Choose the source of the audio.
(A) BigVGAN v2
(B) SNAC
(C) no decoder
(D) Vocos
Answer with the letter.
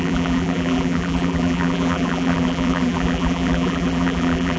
A